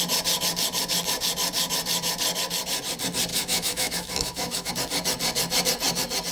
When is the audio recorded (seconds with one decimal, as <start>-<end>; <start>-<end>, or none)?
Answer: 0.0-3.3; 4.7-6.3